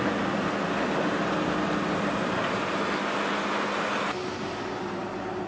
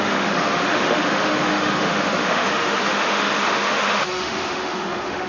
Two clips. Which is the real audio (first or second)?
first